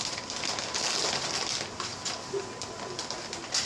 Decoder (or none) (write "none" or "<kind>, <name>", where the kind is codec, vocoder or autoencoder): none